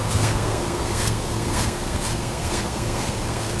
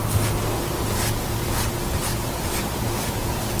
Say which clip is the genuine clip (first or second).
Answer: second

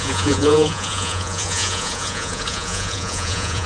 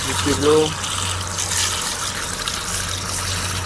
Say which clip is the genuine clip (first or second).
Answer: second